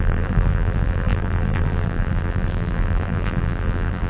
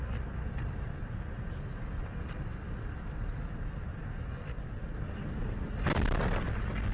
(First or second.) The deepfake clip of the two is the first